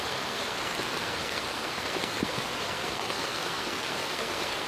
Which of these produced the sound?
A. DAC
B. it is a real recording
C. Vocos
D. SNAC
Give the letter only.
D